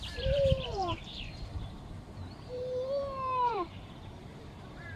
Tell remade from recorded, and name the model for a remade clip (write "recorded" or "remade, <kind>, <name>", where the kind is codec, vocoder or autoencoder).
remade, vocoder, BigVGAN v2